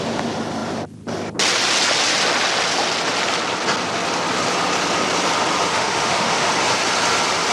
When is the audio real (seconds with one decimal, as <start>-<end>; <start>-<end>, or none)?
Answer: 0.0-5.7; 6.5-7.5